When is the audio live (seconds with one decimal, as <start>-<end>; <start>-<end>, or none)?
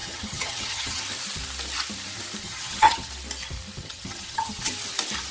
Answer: 1.0-2.4; 3.1-3.8; 4.7-5.3